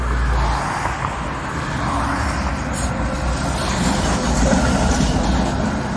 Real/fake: real